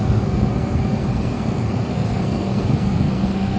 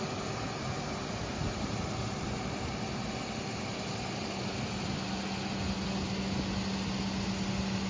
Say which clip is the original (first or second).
second